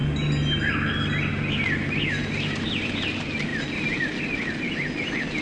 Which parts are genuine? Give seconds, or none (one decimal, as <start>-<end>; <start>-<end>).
0.0-1.3; 2.6-5.4